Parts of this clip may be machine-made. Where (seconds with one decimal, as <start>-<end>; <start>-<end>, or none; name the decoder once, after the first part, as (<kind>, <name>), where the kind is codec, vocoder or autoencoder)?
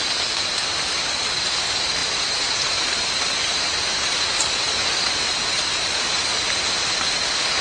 2.0-6.6 (vocoder, BigVGAN v2)